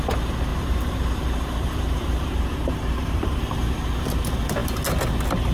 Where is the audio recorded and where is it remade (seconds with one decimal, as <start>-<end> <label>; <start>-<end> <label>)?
0.0-0.5 recorded; 0.5-3.7 remade; 3.7-5.5 recorded